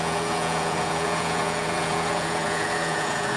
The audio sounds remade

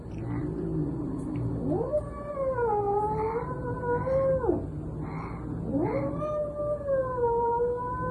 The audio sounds recorded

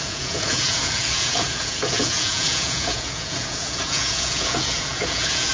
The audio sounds remade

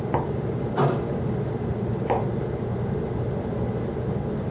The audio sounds recorded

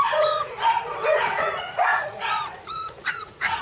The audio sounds remade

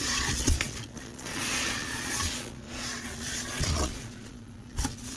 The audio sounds remade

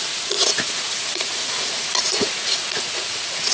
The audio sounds remade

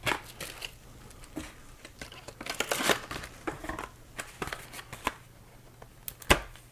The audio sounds recorded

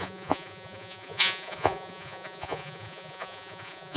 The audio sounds remade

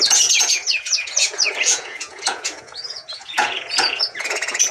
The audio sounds remade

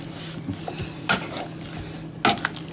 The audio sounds recorded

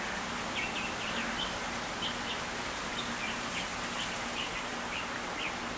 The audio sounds recorded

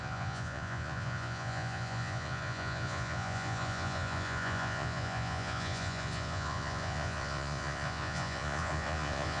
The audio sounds remade